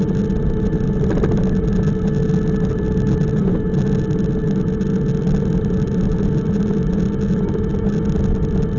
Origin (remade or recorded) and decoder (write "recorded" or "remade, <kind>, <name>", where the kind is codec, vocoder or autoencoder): recorded